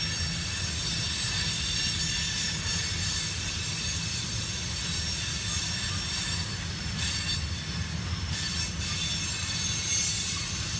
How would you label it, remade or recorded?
recorded